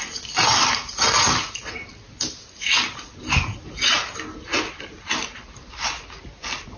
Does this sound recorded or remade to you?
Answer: recorded